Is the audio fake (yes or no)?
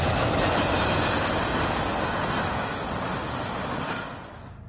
no